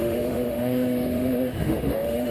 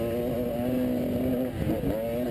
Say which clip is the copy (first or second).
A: first